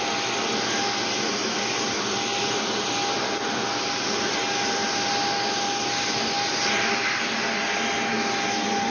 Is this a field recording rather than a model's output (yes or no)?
yes